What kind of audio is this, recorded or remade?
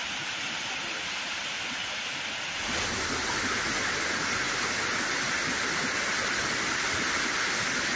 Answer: recorded